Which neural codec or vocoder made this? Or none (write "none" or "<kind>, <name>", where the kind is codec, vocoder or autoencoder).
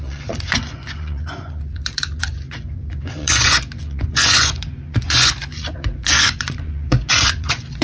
vocoder, Vocos